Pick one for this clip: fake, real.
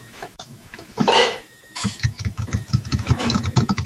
fake